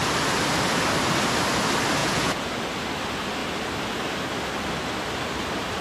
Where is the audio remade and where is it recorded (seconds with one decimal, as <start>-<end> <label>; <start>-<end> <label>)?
0.0-2.0 recorded; 2.0-2.5 remade; 2.5-5.8 recorded